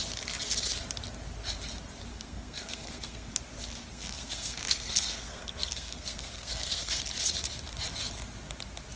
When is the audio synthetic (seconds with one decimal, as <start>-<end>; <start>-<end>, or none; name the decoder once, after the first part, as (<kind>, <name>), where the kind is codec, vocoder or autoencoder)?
2.1-3.3 (codec, SNAC); 3.9-7.0